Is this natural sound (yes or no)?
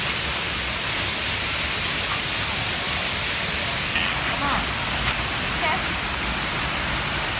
yes